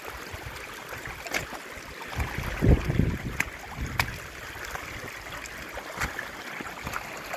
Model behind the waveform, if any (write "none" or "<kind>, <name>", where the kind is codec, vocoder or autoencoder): none